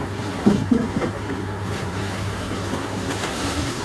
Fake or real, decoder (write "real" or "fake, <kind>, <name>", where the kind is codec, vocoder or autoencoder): fake, codec, SNAC